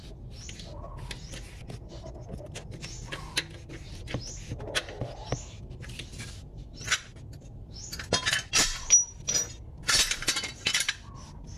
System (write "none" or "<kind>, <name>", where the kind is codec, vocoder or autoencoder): none